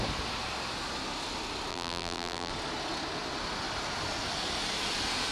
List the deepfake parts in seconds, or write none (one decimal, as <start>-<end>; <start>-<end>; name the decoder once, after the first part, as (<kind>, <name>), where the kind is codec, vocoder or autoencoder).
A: 1.7-2.5 (vocoder, BigVGAN v2)